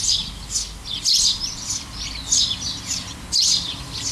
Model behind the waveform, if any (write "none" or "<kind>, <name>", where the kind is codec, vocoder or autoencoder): none